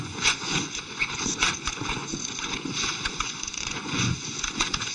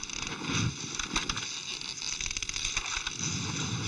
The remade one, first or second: first